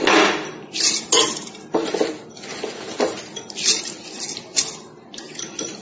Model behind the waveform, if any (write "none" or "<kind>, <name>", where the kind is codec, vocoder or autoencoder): none